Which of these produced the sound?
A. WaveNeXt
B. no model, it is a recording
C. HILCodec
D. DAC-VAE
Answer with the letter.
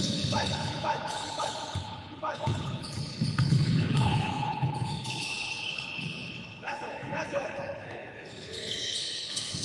C